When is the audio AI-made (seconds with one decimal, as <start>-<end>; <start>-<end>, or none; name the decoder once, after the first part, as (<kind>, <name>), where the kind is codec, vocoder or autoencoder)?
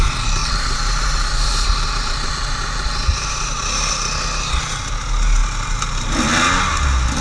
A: 0.4-3.9 (vocoder, BigVGAN v2)